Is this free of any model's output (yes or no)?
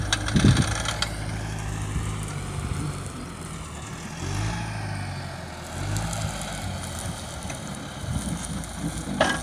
yes